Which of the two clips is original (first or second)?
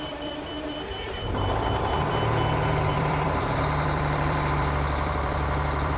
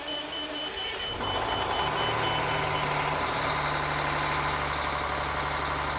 second